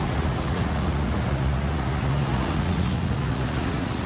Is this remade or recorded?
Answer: remade